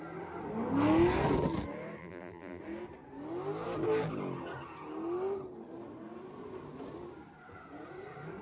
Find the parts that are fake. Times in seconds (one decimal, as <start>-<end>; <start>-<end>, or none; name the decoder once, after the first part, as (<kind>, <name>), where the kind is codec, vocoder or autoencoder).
2.0-2.6 (vocoder, BigVGAN v2)